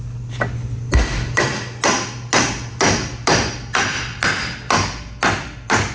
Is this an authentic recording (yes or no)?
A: yes